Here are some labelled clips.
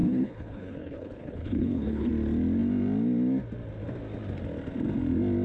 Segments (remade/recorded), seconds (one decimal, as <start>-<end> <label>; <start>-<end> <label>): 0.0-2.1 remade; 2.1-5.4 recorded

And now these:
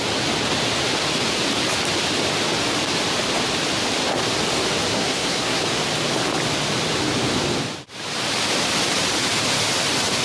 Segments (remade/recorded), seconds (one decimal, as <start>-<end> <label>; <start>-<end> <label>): 0.0-4.9 recorded; 4.9-5.6 remade; 5.6-10.2 recorded

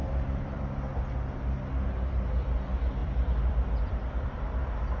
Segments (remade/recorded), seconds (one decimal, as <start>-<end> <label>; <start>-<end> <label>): 0.0-0.6 remade; 0.6-3.0 recorded; 3.0-4.6 remade; 4.6-5.0 recorded

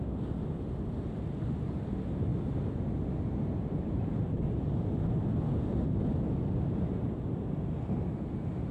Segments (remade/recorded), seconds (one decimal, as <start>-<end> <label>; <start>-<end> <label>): 0.0-8.7 recorded

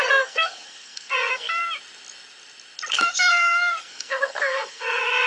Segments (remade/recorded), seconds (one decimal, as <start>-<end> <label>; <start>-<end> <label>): 0.0-1.6 remade; 1.6-2.9 recorded; 2.9-5.3 remade

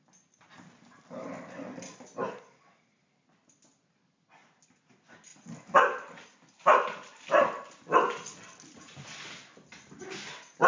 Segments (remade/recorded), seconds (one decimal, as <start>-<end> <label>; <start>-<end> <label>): 0.0-10.7 recorded

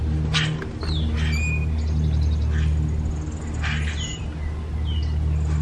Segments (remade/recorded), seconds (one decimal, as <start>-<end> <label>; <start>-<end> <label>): 0.0-5.6 recorded

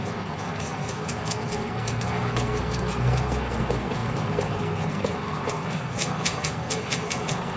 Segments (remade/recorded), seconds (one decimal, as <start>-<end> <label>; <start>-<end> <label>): 0.0-7.6 remade